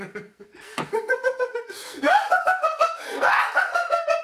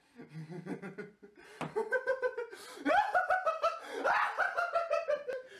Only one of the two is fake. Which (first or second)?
first